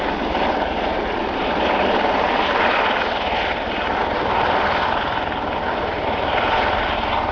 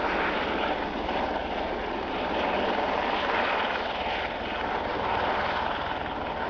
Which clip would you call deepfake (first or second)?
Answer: first